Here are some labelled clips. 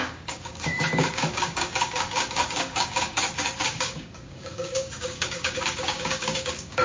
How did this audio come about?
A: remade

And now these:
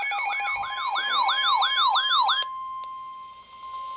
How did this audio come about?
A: recorded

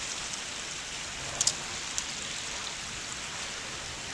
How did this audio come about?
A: recorded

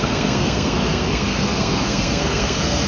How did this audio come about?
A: remade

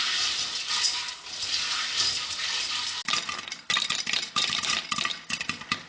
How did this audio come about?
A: recorded